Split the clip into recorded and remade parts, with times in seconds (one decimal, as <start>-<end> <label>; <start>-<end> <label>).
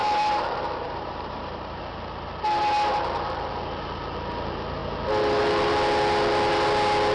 0.0-1.8 remade; 1.8-7.1 recorded